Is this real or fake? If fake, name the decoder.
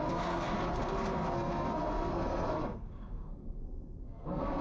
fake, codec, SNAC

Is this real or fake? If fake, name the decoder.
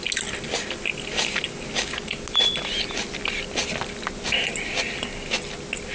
real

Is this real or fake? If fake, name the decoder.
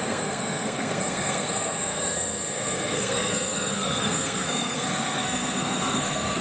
fake, codec, SNAC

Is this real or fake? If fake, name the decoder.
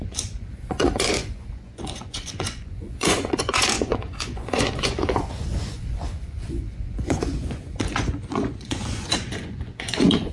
fake, vocoder, Vocos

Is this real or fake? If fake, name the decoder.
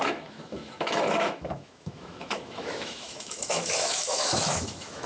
fake, autoencoder, DAC-VAE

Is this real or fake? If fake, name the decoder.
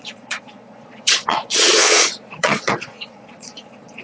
fake, vocoder, Vocos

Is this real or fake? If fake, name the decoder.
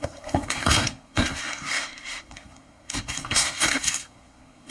fake, codec, SNAC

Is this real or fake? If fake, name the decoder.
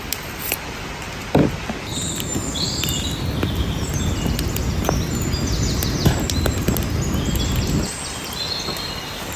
real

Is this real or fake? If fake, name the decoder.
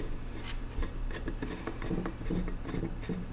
real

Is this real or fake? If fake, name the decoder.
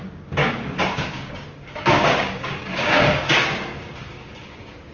fake, codec, DAC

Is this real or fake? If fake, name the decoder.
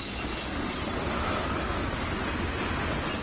real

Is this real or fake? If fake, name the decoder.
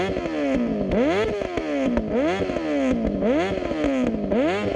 real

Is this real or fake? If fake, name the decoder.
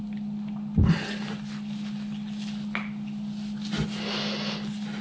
real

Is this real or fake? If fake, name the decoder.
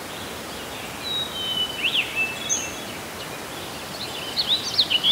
real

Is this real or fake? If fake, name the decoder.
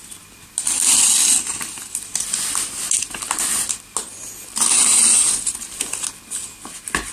real